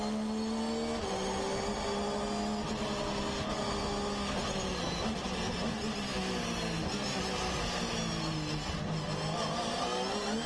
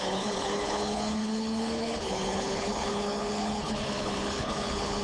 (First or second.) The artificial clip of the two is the second